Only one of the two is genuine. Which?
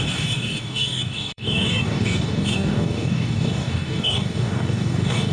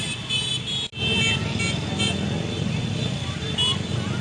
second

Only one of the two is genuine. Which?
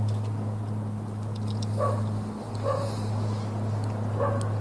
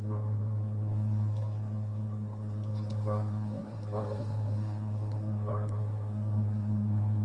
first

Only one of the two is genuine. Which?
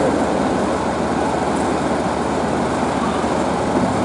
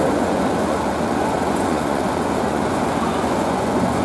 first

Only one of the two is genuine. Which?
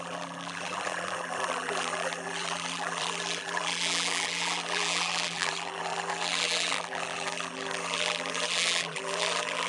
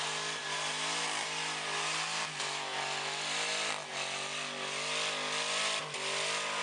second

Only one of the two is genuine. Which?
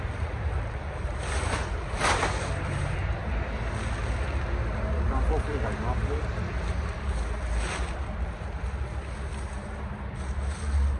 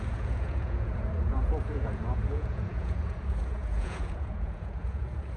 first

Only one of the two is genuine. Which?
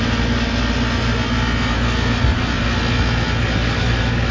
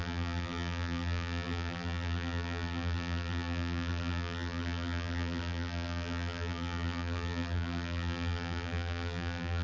first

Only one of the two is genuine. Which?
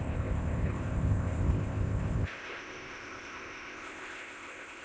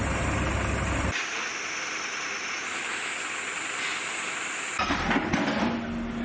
second